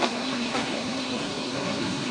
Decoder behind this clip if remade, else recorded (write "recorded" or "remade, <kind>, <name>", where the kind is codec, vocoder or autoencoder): remade, codec, SNAC